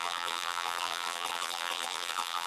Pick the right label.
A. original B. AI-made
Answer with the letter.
B